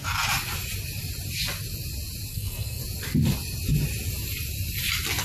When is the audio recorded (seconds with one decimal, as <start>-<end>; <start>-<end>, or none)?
0.0-2.3; 2.8-5.2